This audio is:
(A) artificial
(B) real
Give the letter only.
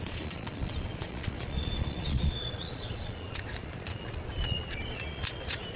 A